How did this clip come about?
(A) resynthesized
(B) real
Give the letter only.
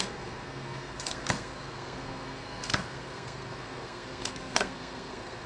A